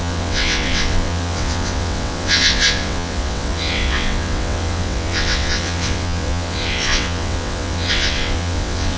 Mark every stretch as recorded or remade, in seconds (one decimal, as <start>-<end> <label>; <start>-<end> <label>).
0.0-9.0 remade

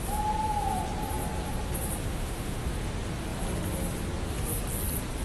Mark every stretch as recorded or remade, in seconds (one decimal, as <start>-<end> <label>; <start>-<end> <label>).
0.0-2.0 recorded; 2.0-2.7 remade; 2.7-5.2 recorded

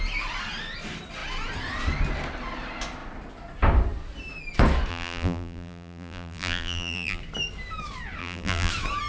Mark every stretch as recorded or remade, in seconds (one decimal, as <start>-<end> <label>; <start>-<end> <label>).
0.0-4.9 recorded; 4.9-7.2 remade; 7.2-8.2 recorded; 8.2-8.7 remade; 8.7-9.1 recorded

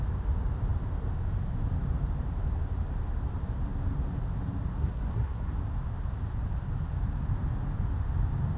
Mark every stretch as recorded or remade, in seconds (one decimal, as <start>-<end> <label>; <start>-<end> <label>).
0.0-4.7 recorded; 4.7-5.5 remade; 5.5-8.6 recorded